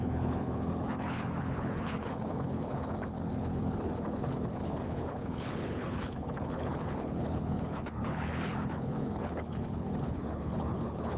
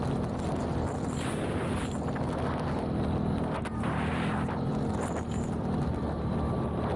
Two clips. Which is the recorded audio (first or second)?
second